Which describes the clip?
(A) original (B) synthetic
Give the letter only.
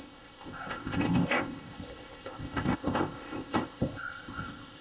B